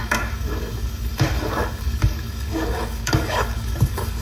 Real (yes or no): no